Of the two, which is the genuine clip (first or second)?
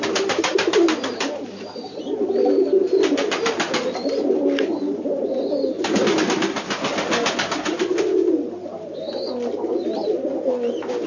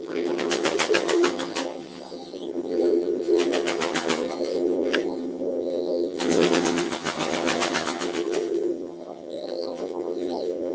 first